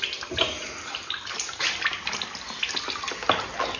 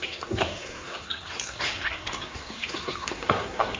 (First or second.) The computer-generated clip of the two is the second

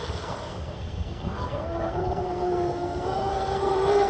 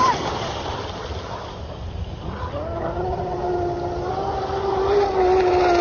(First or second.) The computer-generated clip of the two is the first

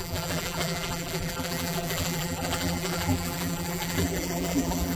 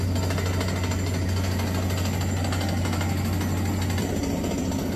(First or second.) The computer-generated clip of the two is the first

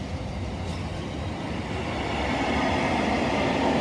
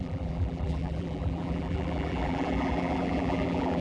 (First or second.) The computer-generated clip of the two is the second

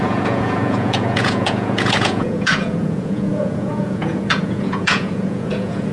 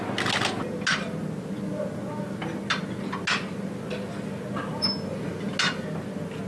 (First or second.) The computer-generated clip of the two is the first